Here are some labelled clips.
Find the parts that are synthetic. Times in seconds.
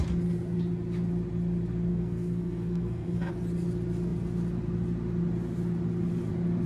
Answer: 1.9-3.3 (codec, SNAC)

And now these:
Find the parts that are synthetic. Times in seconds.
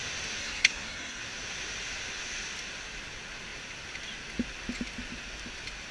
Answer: 0.4-1.2 (codec, SNAC)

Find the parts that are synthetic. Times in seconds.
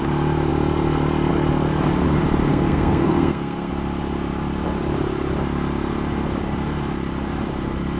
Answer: 2.5-3.7 (codec, SNAC)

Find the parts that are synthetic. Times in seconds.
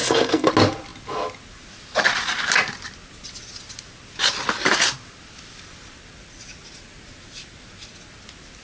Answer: 0.0-0.5 (codec, SNAC)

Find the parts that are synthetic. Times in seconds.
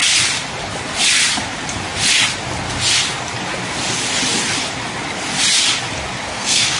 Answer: 6.3-6.8 (codec, SNAC)